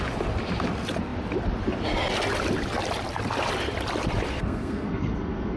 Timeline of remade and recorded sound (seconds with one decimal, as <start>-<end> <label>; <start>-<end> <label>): 0.0-4.3 recorded; 4.3-5.6 remade